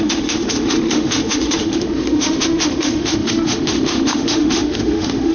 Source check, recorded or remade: remade